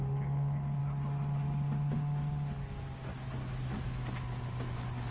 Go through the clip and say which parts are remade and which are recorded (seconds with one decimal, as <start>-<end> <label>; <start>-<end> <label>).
0.0-5.1 recorded